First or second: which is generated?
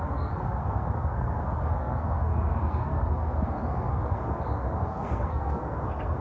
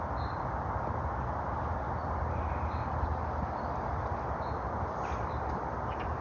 first